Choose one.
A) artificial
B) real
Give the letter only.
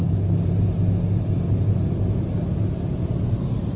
B